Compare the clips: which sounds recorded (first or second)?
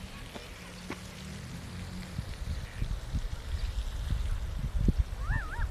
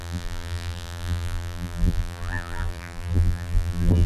first